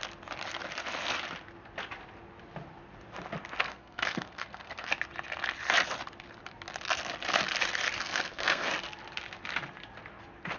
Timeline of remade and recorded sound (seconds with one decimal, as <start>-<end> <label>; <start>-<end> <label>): 0.0-3.6 recorded; 3.6-4.9 remade; 4.9-8.0 recorded; 8.0-8.7 remade; 8.7-10.6 recorded